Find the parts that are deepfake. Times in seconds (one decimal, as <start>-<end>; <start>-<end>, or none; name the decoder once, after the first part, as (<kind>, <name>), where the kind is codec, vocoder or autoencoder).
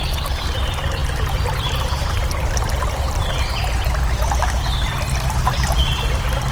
none